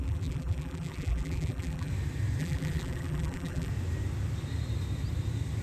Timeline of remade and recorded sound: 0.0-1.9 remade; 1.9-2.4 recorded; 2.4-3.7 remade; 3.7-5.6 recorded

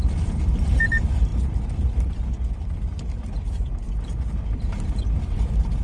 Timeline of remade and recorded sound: 0.0-5.8 remade

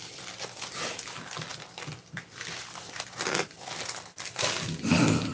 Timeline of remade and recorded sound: 0.0-1.5 recorded; 1.5-4.5 remade; 4.5-5.3 recorded

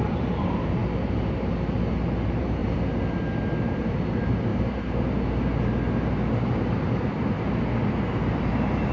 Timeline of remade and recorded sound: 0.0-0.8 remade; 0.8-2.2 recorded; 2.2-2.6 remade; 2.6-3.6 recorded; 3.6-4.5 remade; 4.5-8.5 recorded; 8.5-8.9 remade

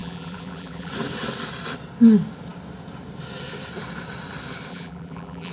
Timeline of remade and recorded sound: 0.0-0.9 remade; 0.9-4.7 recorded; 4.7-5.5 remade

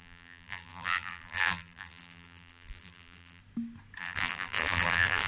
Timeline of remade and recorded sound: 0.0-3.4 remade; 3.4-4.0 recorded; 4.0-5.3 remade

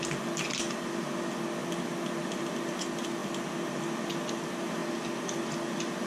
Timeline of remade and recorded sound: 0.0-6.1 recorded

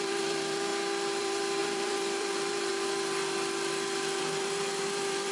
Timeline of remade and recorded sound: 0.0-0.7 remade; 0.7-1.2 recorded; 1.2-2.7 remade; 2.7-4.2 recorded; 4.2-5.3 remade